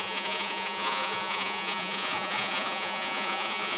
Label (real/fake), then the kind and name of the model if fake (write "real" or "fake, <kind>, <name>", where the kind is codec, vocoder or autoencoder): fake, vocoder, Vocos